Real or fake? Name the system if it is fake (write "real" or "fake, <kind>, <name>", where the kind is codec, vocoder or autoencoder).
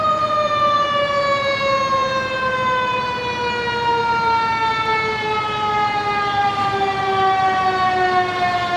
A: real